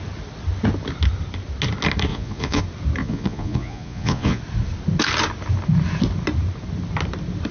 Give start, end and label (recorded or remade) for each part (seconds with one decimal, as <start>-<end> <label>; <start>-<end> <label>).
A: 0.0-2.1 recorded; 2.1-2.6 remade; 2.6-3.0 recorded; 3.0-4.4 remade; 4.4-7.5 recorded